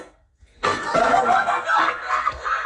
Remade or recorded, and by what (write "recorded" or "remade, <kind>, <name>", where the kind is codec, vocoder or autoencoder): remade, codec, SNAC